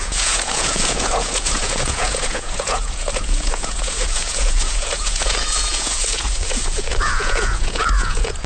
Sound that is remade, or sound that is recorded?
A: remade